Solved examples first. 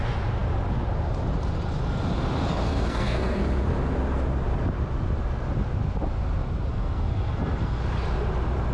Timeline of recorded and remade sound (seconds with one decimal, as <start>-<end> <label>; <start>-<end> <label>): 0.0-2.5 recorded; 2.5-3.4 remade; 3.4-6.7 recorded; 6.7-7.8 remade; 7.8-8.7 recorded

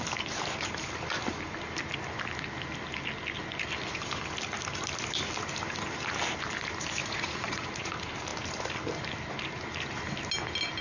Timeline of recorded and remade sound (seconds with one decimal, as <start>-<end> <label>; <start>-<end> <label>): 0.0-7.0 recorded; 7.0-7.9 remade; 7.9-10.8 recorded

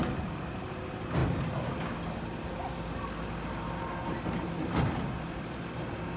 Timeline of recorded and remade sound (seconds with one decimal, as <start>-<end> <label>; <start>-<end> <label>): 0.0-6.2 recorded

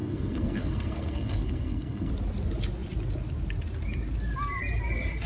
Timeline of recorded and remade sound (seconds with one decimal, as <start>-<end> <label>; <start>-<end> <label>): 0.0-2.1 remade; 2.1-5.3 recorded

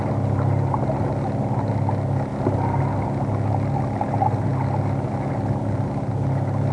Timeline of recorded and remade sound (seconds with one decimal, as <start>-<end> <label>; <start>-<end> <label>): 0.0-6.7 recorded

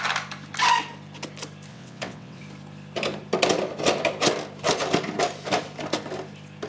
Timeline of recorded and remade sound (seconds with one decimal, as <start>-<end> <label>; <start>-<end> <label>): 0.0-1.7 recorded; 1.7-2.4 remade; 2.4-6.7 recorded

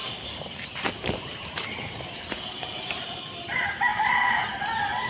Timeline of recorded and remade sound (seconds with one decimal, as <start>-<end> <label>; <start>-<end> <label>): 0.0-3.1 remade; 3.1-3.9 recorded; 3.9-4.6 remade; 4.6-5.1 recorded

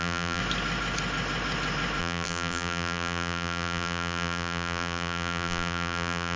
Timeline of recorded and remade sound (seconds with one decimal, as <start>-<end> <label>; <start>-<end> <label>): 0.0-0.4 remade; 0.4-2.0 recorded; 2.0-6.4 remade